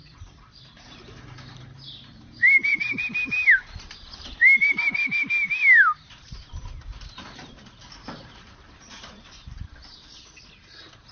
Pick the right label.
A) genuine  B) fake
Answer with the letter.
B